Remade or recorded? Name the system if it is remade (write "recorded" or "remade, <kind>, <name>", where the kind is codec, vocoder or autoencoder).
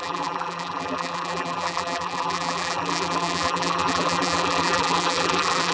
remade, vocoder, BigVGAN v2